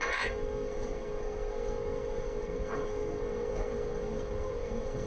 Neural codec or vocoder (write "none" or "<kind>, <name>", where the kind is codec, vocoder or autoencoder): codec, SNAC